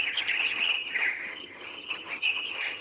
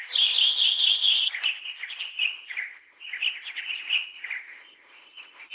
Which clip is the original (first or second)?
second